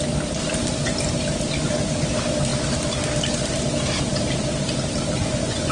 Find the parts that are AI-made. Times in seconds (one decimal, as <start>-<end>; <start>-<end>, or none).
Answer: 5.2-5.7